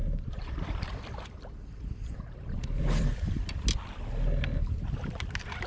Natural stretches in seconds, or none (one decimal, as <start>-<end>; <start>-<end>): 3.4-5.7